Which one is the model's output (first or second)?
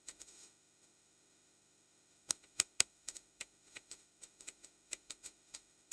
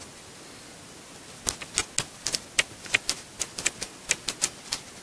first